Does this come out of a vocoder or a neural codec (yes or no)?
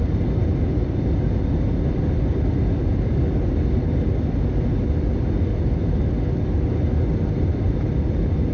no